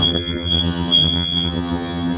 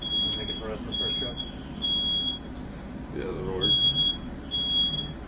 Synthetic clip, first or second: first